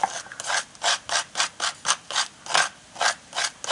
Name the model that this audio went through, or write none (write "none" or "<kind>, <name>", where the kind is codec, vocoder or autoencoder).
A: none